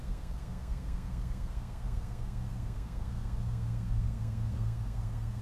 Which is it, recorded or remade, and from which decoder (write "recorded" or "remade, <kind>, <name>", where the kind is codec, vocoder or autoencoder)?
remade, codec, SNAC